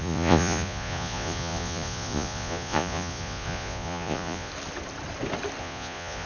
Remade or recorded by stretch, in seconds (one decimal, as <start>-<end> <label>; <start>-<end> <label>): 0.0-4.5 remade; 4.5-5.6 recorded; 5.6-6.3 remade